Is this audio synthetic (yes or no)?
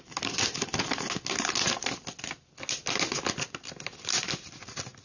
no